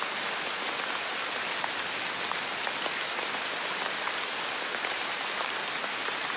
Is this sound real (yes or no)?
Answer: yes